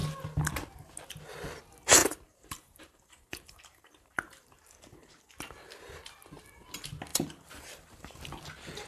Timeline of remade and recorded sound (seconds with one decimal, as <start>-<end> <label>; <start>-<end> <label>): 0.0-2.0 recorded; 2.0-5.4 remade; 5.4-7.1 recorded; 7.1-8.2 remade; 8.2-8.9 recorded